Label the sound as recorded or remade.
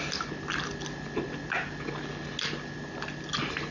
recorded